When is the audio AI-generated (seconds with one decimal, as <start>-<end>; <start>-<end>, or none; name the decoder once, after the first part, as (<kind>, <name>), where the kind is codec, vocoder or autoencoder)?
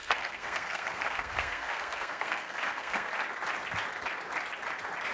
0.0-3.1 (codec, SNAC)